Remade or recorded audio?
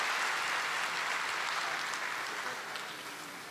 recorded